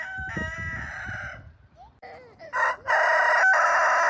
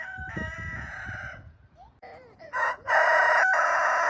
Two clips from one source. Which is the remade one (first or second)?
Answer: second